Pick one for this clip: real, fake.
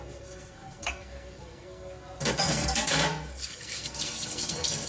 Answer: fake